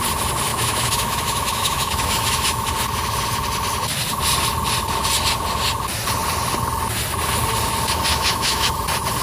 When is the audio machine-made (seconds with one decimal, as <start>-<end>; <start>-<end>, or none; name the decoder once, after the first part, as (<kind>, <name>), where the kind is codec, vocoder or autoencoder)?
0.5-2.7 (autoencoder, DAC-VAE); 8.1-8.7